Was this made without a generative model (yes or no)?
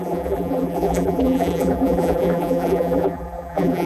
no